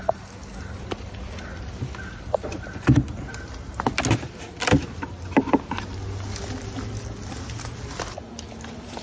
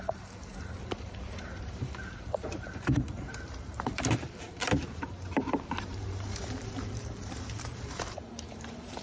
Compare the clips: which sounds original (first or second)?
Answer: first